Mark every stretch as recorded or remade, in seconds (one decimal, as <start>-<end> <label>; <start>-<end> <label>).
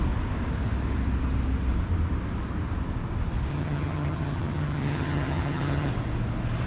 0.0-3.5 recorded; 3.5-5.9 remade; 5.9-6.7 recorded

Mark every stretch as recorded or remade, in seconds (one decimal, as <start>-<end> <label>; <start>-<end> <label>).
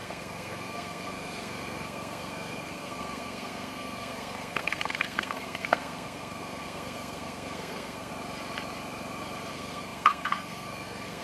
0.0-8.1 remade; 8.1-9.5 recorded; 9.5-11.2 remade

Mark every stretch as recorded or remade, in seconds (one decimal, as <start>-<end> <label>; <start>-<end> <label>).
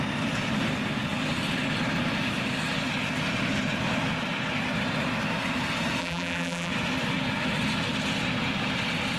0.0-6.0 recorded; 6.0-6.7 remade; 6.7-9.2 recorded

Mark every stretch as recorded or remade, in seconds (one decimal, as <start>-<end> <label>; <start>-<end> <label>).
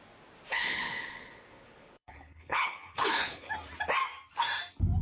0.0-0.5 recorded; 0.5-3.5 remade; 3.5-5.0 recorded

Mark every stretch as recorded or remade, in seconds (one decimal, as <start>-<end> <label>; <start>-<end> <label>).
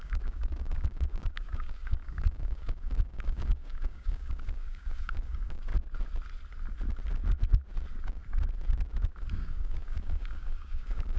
0.0-5.7 remade; 5.7-9.3 recorded; 9.3-11.2 remade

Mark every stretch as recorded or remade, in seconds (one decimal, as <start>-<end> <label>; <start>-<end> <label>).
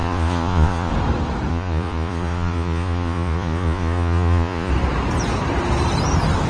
0.0-0.9 remade; 0.9-1.5 recorded; 1.5-4.7 remade; 4.7-6.5 recorded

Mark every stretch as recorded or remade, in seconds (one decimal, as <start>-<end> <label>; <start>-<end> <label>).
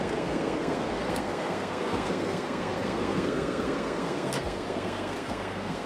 0.0-5.9 remade